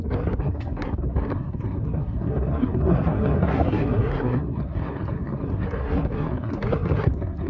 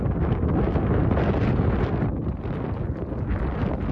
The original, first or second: second